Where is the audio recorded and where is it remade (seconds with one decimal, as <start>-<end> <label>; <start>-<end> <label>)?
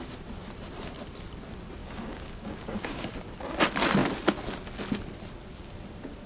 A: 0.0-1.8 recorded; 1.8-3.1 remade; 3.1-6.3 recorded